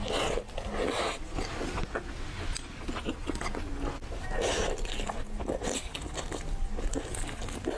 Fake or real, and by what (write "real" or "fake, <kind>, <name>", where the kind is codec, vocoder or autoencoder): real